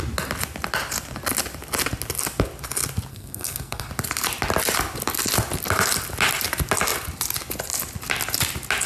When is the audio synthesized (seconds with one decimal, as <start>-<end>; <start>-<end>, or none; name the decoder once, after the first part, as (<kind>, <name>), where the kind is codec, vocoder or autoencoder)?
3.1-3.9 (codec, SNAC)